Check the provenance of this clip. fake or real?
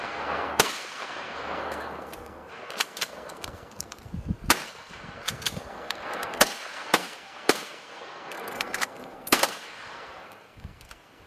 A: fake